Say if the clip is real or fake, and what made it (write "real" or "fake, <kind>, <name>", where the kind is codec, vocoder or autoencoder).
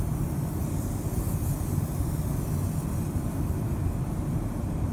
real